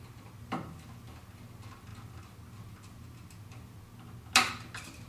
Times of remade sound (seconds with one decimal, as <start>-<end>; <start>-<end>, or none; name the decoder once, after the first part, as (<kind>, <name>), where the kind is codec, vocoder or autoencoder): none